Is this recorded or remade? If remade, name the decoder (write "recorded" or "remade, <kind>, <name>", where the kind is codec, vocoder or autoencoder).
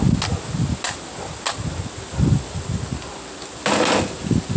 recorded